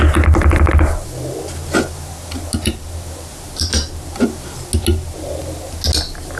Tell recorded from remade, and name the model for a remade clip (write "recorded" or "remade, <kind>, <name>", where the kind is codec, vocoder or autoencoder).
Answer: recorded